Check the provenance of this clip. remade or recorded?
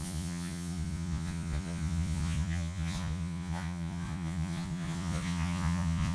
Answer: remade